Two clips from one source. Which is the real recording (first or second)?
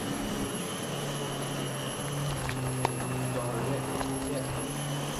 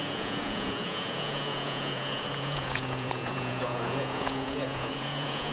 first